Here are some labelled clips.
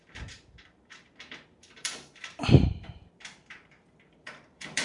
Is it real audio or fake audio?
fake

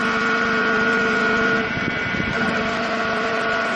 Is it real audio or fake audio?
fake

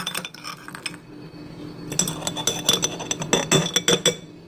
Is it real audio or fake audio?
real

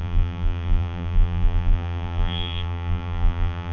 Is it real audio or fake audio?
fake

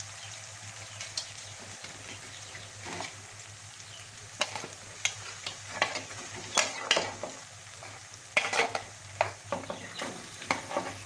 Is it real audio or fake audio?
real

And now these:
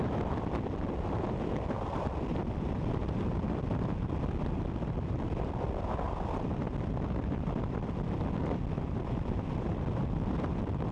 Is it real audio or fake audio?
fake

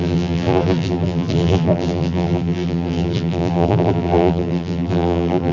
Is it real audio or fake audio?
fake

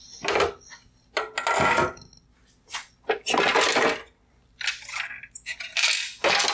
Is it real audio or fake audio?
real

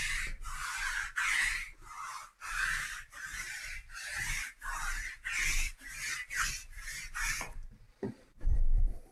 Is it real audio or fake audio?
fake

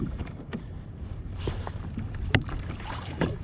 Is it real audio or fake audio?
fake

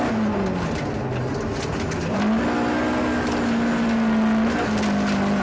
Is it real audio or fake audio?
real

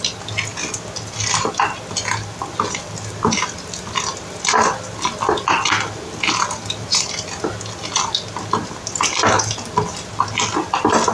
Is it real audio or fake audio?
real